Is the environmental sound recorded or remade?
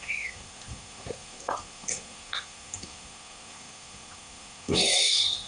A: remade